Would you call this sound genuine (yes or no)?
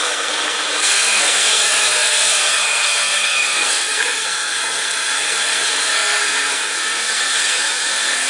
no